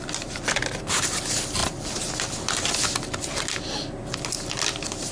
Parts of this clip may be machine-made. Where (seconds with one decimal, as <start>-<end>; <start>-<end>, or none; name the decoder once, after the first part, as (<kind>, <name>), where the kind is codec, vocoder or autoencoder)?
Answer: none